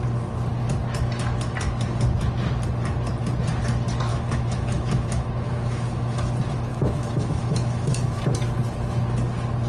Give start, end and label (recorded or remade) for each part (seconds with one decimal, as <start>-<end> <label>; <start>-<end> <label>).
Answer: 0.0-4.1 recorded; 4.1-6.3 remade; 6.3-6.7 recorded; 6.7-8.2 remade; 8.2-9.7 recorded